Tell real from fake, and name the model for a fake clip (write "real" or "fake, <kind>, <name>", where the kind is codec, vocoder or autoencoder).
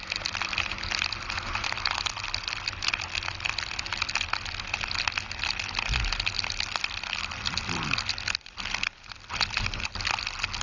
real